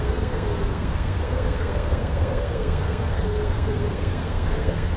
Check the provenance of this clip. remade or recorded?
remade